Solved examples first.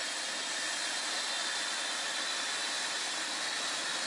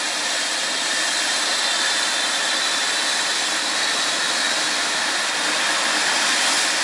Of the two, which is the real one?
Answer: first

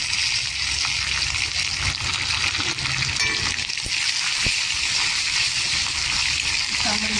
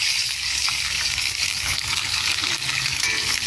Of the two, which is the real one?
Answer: first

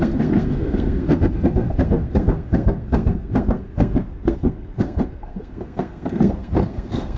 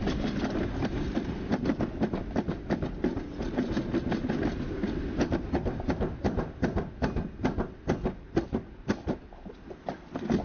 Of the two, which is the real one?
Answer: second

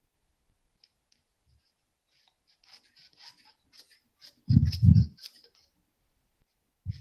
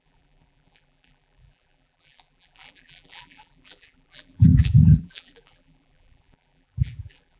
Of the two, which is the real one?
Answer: first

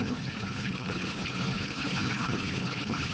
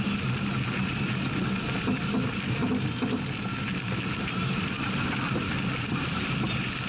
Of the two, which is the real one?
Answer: second